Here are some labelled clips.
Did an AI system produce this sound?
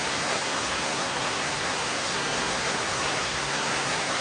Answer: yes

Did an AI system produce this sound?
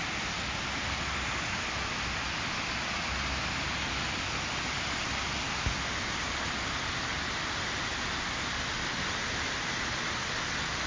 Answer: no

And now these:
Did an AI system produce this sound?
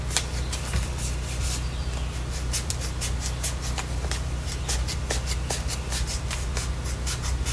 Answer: no